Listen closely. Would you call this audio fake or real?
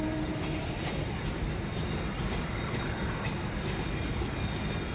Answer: real